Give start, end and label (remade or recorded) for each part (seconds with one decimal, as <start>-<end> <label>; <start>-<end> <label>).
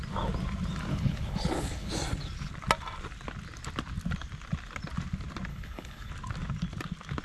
0.0-0.9 recorded; 0.9-1.9 remade; 1.9-5.5 recorded; 5.5-6.1 remade; 6.1-7.2 recorded